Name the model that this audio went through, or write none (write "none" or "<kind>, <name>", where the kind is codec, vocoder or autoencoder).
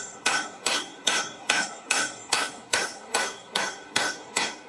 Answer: codec, SNAC